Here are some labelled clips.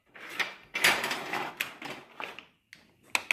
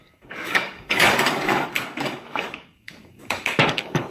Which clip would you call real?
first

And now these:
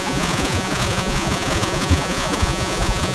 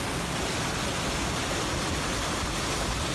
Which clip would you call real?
second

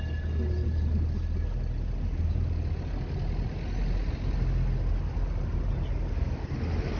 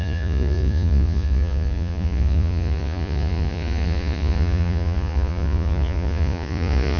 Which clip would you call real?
first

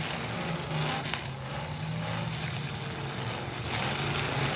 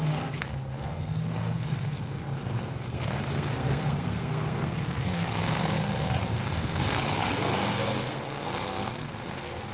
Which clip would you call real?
first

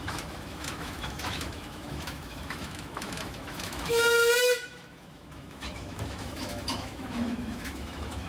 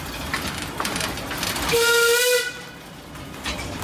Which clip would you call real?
second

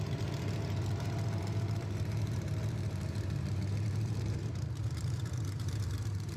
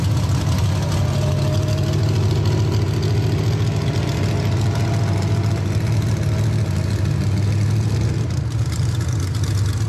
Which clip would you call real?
second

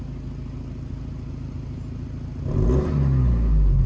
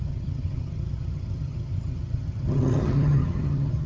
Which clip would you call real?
first